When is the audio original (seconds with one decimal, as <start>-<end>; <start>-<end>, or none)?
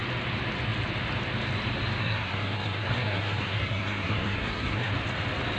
0.0-2.0; 4.9-5.6